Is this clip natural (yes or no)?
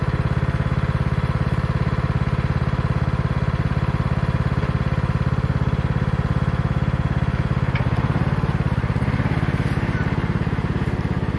yes